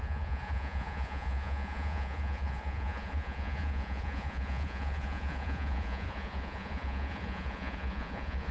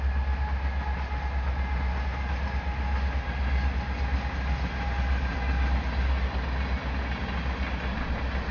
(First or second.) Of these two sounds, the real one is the second